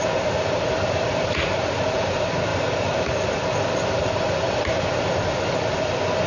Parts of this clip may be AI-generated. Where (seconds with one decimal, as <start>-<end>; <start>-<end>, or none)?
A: none